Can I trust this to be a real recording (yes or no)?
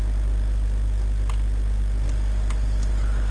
yes